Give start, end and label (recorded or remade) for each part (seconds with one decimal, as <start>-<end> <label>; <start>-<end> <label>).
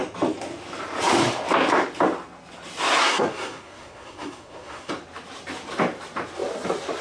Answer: 0.0-3.0 recorded; 3.0-4.9 remade; 4.9-7.0 recorded